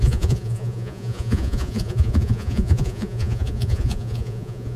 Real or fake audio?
fake